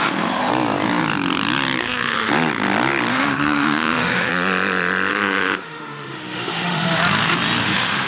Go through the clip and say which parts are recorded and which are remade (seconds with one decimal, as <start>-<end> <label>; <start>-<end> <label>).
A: 0.0-0.5 remade; 0.5-1.8 recorded; 1.8-2.3 remade; 2.3-3.1 recorded; 3.1-4.3 remade; 4.3-5.1 recorded; 5.1-7.0 remade; 7.0-7.6 recorded; 7.6-8.1 remade